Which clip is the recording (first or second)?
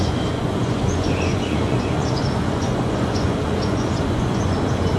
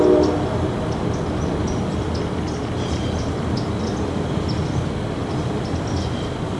second